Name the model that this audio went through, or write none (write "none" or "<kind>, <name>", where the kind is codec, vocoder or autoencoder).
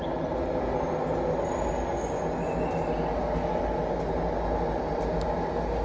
none